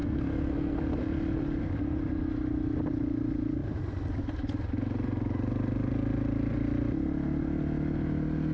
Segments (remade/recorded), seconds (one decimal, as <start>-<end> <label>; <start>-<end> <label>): 0.0-0.8 remade; 0.8-8.5 recorded